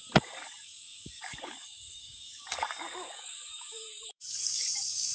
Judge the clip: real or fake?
fake